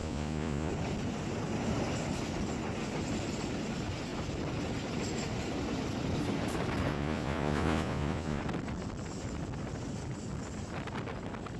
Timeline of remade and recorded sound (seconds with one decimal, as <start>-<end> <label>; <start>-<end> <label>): 0.0-0.7 remade; 0.7-6.9 recorded; 6.9-8.4 remade; 8.4-11.6 recorded